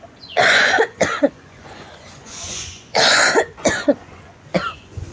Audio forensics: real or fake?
fake